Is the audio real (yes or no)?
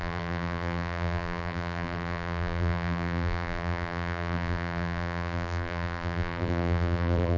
no